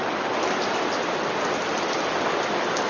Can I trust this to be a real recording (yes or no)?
yes